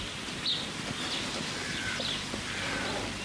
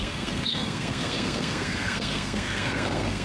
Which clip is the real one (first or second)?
first